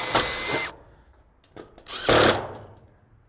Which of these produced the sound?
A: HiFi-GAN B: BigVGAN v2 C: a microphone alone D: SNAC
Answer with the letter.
C